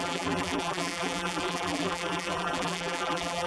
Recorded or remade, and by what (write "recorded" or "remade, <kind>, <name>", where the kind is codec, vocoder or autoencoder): remade, vocoder, BigVGAN v2